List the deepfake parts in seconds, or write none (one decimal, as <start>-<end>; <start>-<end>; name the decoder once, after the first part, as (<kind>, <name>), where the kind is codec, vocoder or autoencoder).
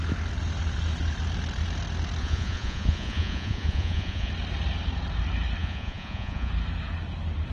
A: 2.2-4.3 (vocoder, Vocos); 5.6-6.5